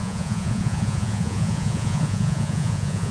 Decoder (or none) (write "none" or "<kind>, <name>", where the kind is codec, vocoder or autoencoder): vocoder, Vocos